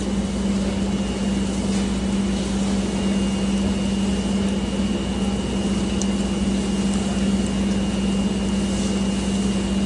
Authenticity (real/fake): real